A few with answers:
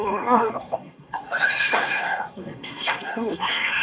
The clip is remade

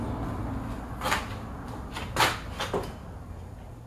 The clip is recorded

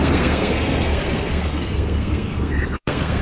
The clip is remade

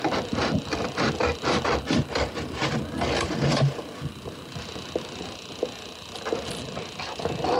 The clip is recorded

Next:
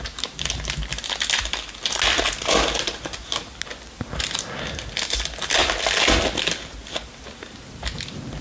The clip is recorded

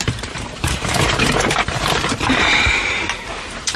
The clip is remade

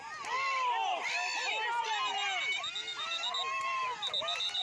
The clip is recorded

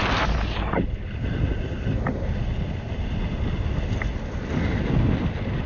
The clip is remade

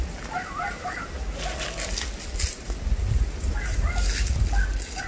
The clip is recorded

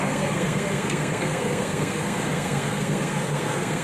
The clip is remade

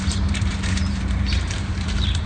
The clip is remade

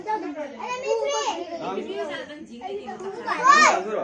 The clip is recorded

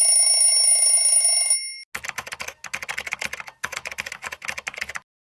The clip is recorded